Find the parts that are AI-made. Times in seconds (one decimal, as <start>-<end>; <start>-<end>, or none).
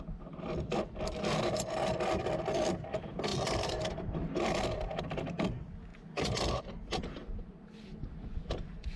3.3-5.0